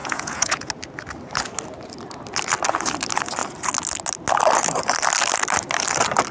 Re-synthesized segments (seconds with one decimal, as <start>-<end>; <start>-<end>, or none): 0.0-0.7